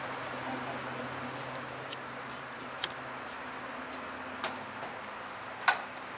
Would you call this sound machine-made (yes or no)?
no